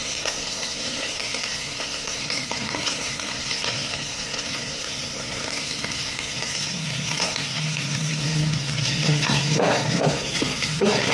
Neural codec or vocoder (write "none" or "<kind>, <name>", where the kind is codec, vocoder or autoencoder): codec, SNAC